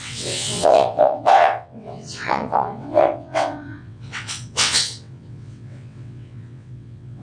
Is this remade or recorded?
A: remade